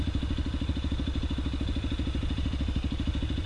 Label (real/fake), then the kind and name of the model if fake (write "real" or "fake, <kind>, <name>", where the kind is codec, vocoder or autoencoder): real